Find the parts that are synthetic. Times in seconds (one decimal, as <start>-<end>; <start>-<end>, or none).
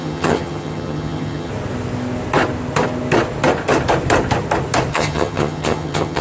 0.0-1.5; 4.9-6.2